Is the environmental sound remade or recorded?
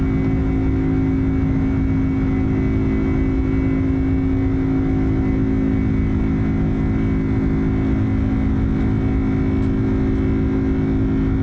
recorded